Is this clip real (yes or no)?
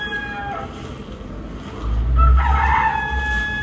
yes